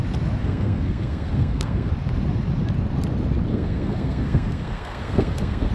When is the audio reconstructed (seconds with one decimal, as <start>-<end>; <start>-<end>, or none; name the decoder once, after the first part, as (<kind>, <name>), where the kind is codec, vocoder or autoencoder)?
0.4-1.9 (codec, SNAC); 3.5-5.7